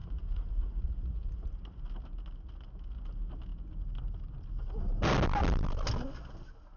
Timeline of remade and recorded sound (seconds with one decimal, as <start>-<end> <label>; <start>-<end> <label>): 0.0-1.5 remade; 1.5-6.8 recorded